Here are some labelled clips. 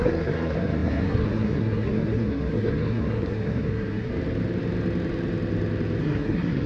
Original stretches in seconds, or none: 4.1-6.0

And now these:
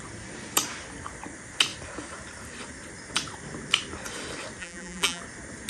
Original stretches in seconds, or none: 0.0-4.6; 5.2-5.7

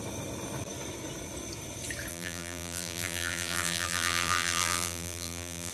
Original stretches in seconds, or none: 0.0-2.1

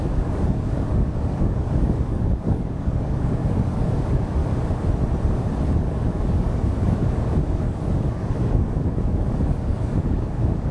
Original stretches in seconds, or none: 4.4-5.8